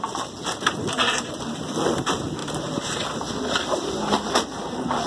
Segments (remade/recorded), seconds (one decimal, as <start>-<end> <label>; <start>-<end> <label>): 0.0-5.1 remade